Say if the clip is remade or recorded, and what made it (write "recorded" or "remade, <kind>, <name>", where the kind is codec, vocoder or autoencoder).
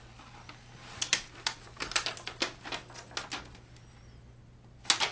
recorded